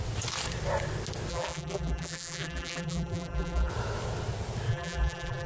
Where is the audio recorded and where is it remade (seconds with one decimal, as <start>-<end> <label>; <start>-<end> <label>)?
0.0-1.3 recorded; 1.3-3.7 remade; 3.7-4.7 recorded; 4.7-5.5 remade